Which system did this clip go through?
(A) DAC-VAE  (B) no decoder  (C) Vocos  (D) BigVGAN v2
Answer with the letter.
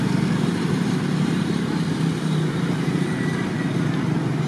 D